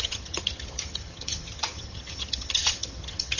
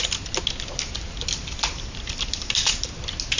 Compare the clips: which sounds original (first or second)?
second